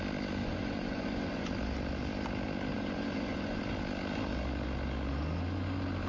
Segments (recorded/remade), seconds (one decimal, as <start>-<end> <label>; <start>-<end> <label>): 0.0-0.4 recorded; 0.4-1.5 remade; 1.5-2.7 recorded; 2.7-3.6 remade; 3.6-6.1 recorded